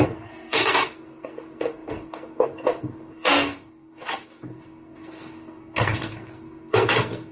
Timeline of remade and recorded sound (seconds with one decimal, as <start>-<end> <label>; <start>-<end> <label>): 0.0-7.3 remade